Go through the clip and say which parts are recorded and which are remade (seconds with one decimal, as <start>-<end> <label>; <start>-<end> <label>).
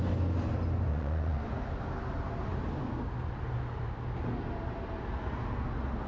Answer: 0.0-0.9 recorded; 0.9-1.4 remade; 1.4-6.1 recorded